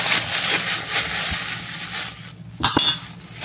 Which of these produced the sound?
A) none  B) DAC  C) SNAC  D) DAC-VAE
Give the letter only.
A